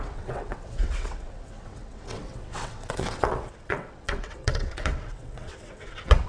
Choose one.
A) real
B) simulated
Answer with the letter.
B